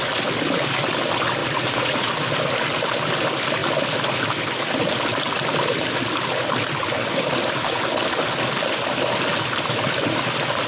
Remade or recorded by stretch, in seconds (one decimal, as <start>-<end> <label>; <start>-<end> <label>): 0.0-1.4 recorded; 1.4-2.1 remade; 2.1-10.7 recorded